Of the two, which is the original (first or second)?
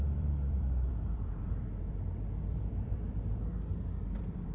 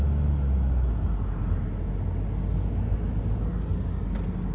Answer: second